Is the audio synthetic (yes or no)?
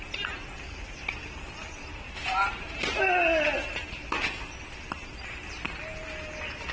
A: no